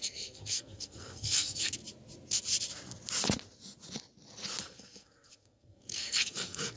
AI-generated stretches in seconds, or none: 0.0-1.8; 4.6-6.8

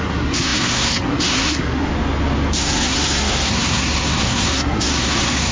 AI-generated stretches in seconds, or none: 0.0-1.9; 2.5-5.5